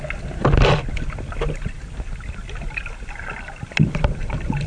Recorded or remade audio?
recorded